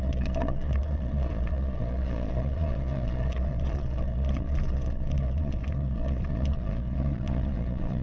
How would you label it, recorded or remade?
remade